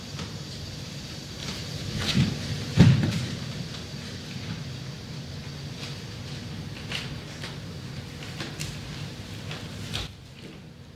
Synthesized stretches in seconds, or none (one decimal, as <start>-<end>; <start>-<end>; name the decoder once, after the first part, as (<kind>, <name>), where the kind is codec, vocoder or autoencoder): none